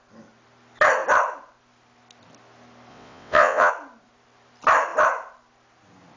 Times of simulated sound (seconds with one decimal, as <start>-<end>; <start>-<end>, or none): 2.9-3.7